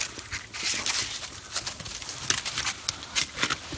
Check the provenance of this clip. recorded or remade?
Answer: recorded